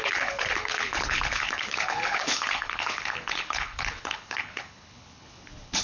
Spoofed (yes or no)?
yes